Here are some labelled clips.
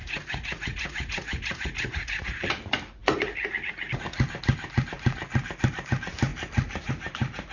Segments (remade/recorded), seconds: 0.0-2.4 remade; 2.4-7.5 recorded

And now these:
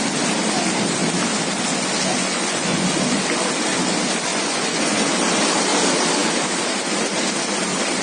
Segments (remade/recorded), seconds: 0.0-2.2 recorded; 2.2-2.9 remade; 2.9-4.3 recorded; 4.3-5.1 remade; 5.1-8.0 recorded

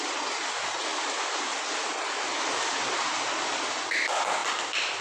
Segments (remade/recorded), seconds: 0.0-5.0 recorded

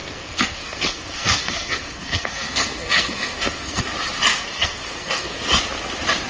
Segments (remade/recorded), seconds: 0.0-3.8 remade; 3.8-4.3 recorded; 4.3-5.4 remade; 5.4-6.3 recorded